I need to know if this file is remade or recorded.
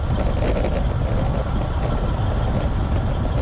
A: recorded